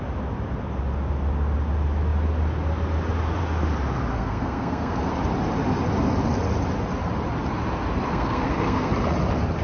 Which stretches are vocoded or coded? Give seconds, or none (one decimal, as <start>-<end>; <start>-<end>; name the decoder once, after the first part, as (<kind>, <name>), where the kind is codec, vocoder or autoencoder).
4.1-5.1 (codec, SNAC); 8.1-8.9

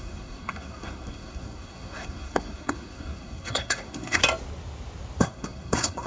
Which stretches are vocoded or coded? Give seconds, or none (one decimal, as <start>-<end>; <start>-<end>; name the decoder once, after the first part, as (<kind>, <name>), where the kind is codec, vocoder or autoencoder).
0.0-4.2 (codec, SNAC); 5.2-6.1

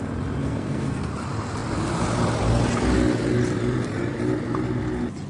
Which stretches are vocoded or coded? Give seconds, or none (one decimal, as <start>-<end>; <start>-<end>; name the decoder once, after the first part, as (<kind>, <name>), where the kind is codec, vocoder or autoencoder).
0.4-1.1 (codec, SNAC)

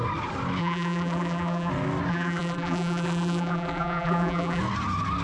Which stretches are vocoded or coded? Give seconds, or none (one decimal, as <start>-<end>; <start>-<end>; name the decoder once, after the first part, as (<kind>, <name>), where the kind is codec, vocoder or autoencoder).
0.6-1.7 (vocoder, BigVGAN v2); 2.1-4.6

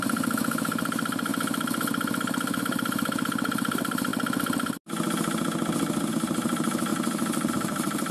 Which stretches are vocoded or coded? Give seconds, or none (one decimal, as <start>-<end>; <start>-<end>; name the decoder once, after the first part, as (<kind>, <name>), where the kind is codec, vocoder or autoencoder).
0.0-1.3 (vocoder, BigVGAN v2); 2.6-4.1; 6.1-6.9; 7.5-8.1

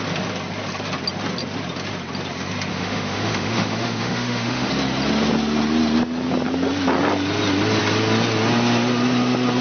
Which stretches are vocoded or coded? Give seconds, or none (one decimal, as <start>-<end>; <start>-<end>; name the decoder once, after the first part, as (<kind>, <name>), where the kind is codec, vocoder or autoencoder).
2.7-4.7 (autoencoder, DAC-VAE)